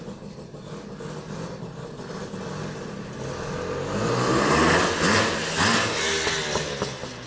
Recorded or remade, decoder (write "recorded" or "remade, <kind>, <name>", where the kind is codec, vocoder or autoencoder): recorded